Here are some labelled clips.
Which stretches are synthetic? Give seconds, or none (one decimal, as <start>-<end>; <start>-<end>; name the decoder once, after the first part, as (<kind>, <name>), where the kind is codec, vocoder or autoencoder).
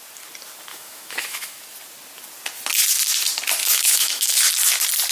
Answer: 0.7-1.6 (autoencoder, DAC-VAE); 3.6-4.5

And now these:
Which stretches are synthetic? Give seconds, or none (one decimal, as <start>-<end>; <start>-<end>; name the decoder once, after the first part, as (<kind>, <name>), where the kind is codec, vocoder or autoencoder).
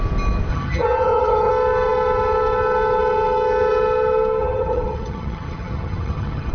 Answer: 0.5-1.5 (vocoder, HiFi-GAN); 4.4-6.5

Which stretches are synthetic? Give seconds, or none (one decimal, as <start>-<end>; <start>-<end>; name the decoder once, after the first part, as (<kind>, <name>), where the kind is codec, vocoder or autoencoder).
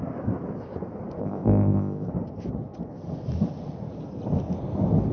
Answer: 1.2-2.1 (codec, ZipCodec)